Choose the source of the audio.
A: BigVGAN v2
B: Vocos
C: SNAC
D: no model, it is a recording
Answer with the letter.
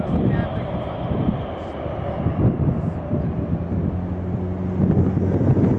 D